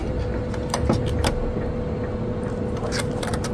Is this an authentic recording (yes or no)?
yes